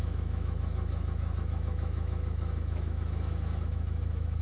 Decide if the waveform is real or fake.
fake